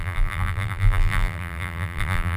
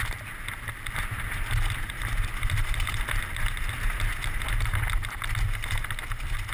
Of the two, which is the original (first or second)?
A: second